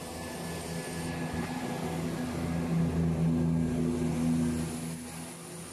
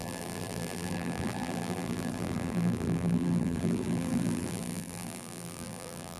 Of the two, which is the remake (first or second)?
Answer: second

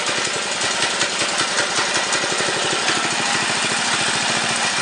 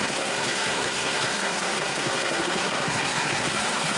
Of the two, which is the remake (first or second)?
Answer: second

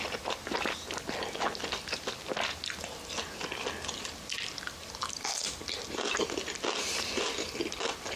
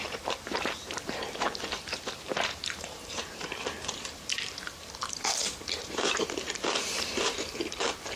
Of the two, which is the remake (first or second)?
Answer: second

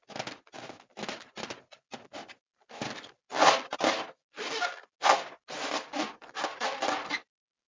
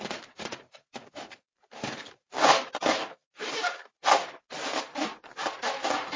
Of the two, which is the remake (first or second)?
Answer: second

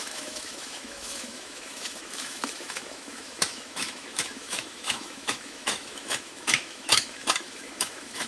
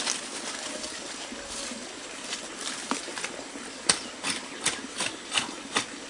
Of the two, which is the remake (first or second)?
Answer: first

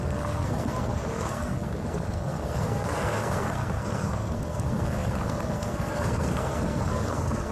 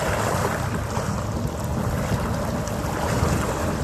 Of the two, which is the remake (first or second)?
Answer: first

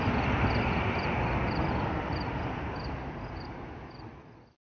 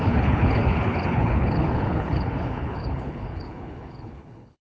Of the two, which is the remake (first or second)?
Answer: second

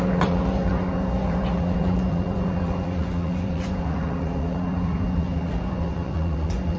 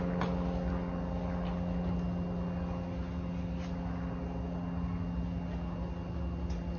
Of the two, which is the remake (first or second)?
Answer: first